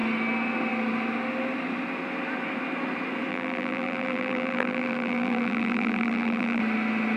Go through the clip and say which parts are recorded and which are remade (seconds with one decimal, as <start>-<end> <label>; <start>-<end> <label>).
0.0-3.3 recorded; 3.3-6.6 remade; 6.6-7.2 recorded